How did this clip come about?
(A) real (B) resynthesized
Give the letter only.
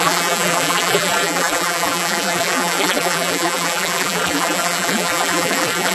B